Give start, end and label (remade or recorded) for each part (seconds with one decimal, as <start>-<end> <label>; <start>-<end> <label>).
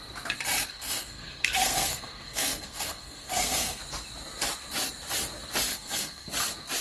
0.0-0.7 recorded; 0.7-3.8 remade; 3.8-5.7 recorded; 5.7-6.3 remade; 6.3-6.8 recorded